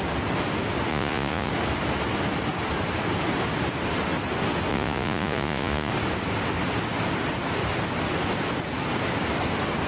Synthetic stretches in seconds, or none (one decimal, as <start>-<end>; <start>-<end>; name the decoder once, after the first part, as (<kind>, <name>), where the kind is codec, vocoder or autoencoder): 0.9-1.5 (vocoder, Vocos); 4.7-5.9